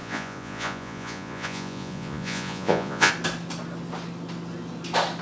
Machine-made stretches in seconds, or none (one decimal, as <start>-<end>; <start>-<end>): 0.0-3.1